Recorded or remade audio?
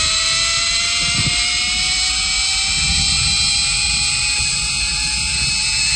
recorded